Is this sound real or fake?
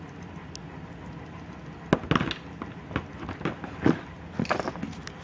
real